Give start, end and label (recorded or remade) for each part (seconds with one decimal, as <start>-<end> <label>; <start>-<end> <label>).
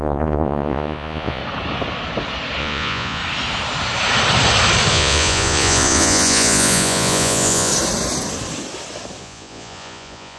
0.0-1.4 remade; 1.4-2.6 recorded; 2.6-3.2 remade; 3.2-4.9 recorded; 4.9-7.7 remade; 7.7-9.2 recorded; 9.2-10.4 remade